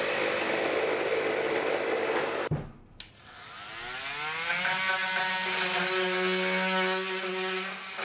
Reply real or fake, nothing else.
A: real